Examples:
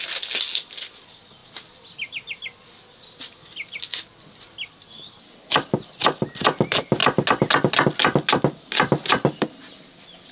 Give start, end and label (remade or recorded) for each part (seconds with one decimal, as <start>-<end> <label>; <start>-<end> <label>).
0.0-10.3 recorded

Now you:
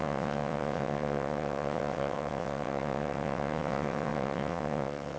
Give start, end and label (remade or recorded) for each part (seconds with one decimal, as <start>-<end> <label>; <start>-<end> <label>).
0.0-5.2 remade

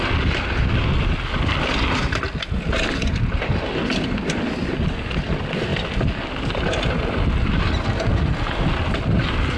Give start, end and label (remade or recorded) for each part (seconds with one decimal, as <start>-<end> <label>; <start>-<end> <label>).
0.0-9.6 recorded

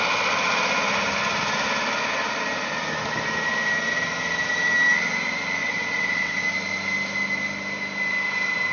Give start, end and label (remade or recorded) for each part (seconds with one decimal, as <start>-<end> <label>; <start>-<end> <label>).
0.0-5.6 recorded; 5.6-6.4 remade; 6.4-8.7 recorded

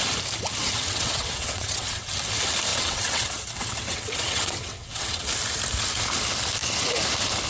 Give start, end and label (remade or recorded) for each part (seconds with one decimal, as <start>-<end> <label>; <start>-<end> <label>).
0.0-0.6 recorded; 0.6-2.1 remade; 2.1-2.7 recorded; 2.7-5.2 remade; 5.2-7.5 recorded

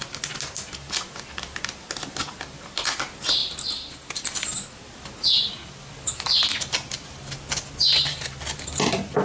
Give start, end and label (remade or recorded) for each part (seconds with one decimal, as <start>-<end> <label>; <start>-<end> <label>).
0.0-9.2 recorded

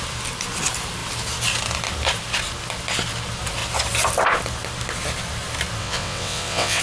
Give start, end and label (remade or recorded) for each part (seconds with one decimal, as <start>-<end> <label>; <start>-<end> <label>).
0.0-5.8 recorded; 5.8-6.8 remade

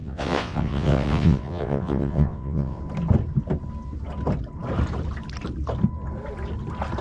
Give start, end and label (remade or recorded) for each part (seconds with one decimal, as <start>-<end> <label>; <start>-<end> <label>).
0.0-2.8 remade; 2.8-7.0 recorded